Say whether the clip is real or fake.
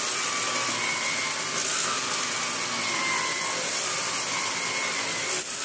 real